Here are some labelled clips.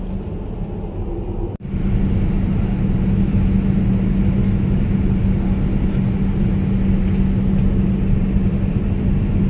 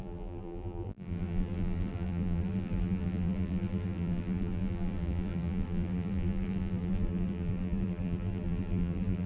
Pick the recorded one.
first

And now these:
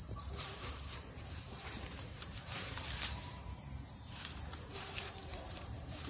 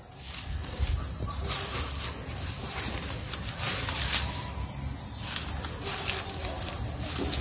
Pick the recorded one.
second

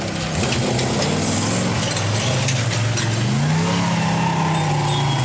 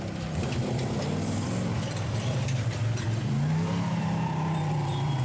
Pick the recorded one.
first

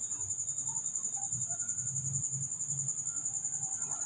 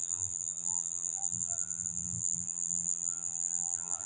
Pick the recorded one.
first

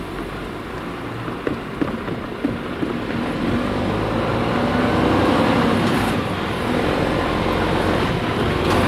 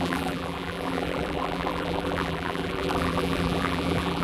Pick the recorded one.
first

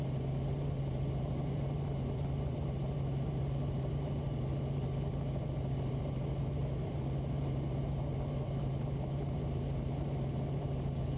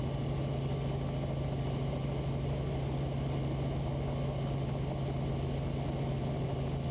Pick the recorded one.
second